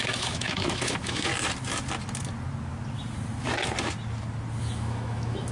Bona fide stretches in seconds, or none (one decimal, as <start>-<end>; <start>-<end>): 1.3-4.6